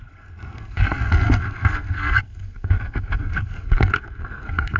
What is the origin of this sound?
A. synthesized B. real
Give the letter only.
A